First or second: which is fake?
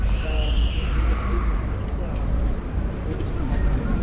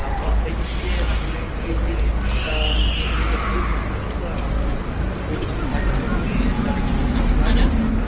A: first